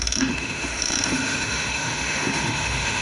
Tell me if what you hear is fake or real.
fake